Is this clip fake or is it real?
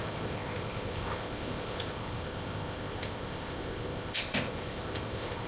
fake